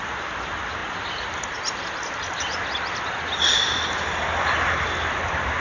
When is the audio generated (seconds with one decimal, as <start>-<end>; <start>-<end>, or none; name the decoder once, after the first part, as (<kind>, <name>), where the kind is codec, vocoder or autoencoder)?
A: none